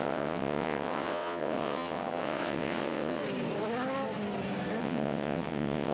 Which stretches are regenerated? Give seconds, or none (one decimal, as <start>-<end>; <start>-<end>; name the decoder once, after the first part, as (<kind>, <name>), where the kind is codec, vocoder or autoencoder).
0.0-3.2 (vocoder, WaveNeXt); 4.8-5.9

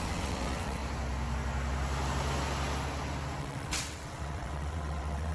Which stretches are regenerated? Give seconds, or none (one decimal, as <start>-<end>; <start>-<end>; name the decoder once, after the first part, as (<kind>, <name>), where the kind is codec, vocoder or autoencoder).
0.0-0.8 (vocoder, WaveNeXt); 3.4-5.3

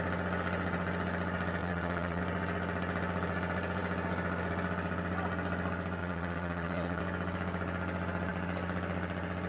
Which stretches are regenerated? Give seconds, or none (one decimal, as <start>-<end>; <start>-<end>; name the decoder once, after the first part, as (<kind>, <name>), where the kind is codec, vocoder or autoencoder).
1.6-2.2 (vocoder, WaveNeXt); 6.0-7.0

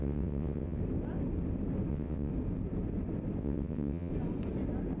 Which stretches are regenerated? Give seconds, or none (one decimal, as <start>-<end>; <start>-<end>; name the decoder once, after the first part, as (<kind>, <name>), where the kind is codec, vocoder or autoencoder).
0.0-0.8 (vocoder, WaveNeXt); 1.9-2.3; 3.4-4.1

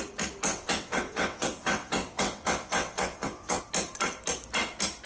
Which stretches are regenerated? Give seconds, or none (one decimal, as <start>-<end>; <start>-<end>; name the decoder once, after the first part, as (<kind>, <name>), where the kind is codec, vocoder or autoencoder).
0.5-3.6 (vocoder, WaveNeXt)

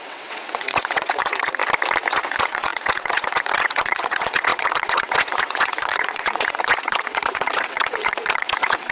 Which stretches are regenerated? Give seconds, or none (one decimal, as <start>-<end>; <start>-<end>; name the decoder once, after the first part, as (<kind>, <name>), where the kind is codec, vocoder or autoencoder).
0.0-1.6 (vocoder, WaveNeXt); 2.1-8.9